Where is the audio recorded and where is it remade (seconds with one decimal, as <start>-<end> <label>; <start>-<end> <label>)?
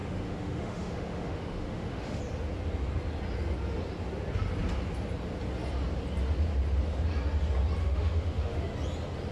0.0-2.2 remade; 2.2-7.8 recorded; 7.8-8.6 remade; 8.6-9.3 recorded